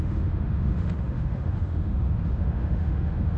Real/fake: fake